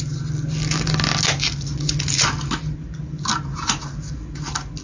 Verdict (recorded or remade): recorded